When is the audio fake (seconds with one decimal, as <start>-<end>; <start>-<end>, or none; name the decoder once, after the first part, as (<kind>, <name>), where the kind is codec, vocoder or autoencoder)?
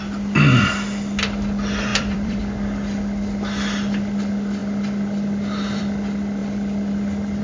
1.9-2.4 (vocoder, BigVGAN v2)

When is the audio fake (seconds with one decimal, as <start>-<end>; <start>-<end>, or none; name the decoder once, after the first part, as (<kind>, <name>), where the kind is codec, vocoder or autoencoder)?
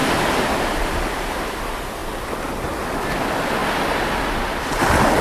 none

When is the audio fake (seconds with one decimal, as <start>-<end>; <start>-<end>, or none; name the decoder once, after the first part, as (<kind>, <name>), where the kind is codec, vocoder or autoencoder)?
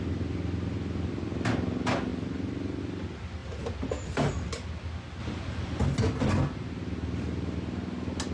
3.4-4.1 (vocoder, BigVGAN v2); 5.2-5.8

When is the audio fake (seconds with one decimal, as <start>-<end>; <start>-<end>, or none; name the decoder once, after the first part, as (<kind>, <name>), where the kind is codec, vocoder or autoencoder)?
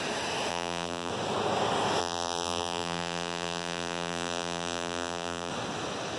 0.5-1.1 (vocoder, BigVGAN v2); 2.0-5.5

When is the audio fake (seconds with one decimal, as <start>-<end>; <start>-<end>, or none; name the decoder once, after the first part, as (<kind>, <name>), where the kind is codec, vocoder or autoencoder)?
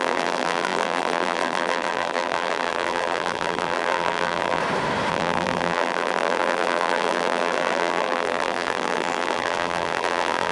0.0-4.6 (vocoder, BigVGAN v2); 5.1-10.5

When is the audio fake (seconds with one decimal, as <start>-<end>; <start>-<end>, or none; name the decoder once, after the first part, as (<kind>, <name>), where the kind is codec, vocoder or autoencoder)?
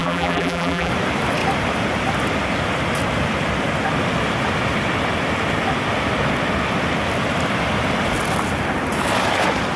0.0-0.9 (vocoder, BigVGAN v2)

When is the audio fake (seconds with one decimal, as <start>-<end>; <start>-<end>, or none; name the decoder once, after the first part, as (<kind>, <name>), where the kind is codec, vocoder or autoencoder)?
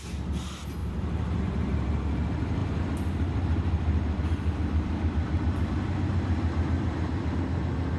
0.8-1.4 (vocoder, BigVGAN v2); 2.6-7.3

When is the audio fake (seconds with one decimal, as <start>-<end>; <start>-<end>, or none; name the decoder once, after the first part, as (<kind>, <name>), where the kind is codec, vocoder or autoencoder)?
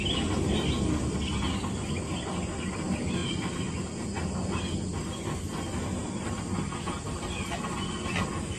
3.2-4.6 (vocoder, BigVGAN v2)